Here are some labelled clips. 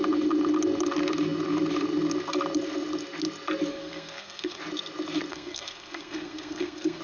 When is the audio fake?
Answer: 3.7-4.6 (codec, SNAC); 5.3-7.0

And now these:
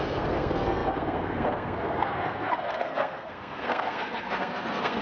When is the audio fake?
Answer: 0.0-5.0 (codec, SNAC)